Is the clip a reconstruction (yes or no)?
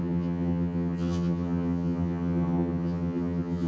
yes